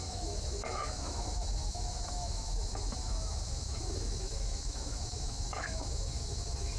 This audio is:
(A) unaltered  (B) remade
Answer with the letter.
B